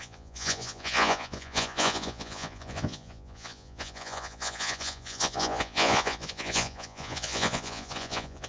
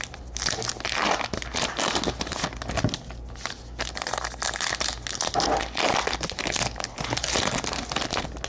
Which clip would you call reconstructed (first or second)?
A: first